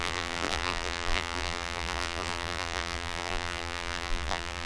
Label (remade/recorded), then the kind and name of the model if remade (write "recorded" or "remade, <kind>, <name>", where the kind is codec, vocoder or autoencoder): remade, vocoder, BigVGAN v2